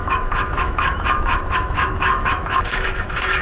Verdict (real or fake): fake